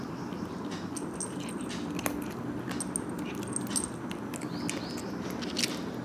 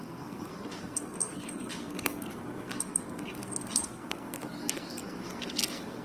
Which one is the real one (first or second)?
first